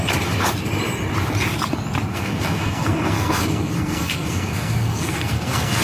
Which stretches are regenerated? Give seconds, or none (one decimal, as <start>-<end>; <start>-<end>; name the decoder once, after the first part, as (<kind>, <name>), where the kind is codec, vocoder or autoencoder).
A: 2.1-5.8 (codec, SNAC)